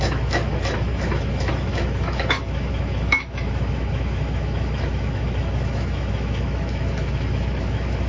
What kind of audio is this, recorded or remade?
remade